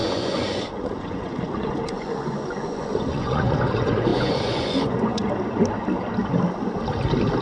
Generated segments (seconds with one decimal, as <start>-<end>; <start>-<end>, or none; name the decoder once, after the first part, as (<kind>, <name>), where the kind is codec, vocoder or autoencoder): 0.0-5.2 (vocoder, Vocos)